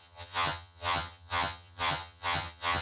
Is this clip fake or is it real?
fake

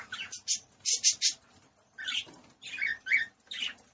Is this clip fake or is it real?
real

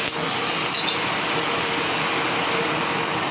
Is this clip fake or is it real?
real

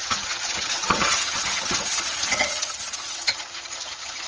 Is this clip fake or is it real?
fake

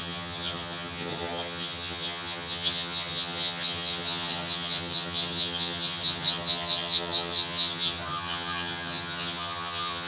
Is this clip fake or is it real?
fake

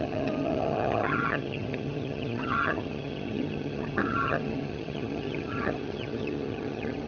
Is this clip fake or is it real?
fake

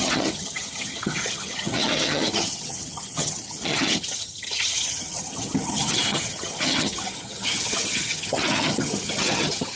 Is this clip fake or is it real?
fake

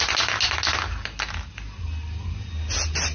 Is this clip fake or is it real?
real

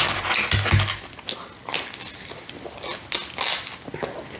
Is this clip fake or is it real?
real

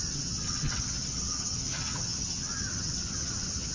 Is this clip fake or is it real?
fake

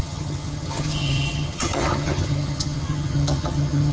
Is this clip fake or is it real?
fake